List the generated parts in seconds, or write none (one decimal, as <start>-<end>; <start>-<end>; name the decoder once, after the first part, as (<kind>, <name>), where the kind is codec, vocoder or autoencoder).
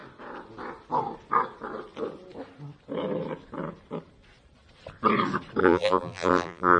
5.6-6.8 (vocoder, BigVGAN v2)